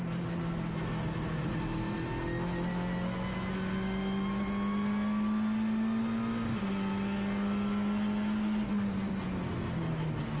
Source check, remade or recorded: recorded